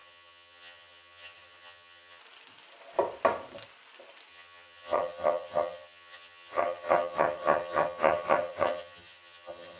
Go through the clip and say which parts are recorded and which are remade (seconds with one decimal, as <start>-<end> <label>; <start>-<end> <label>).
0.0-2.2 remade; 2.2-4.3 recorded; 4.3-9.8 remade